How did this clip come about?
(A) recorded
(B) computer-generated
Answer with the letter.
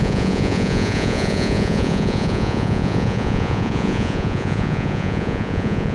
B